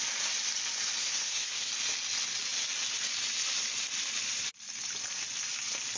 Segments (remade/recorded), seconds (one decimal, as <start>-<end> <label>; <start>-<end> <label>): 0.0-1.0 recorded; 1.0-1.7 remade; 1.7-6.0 recorded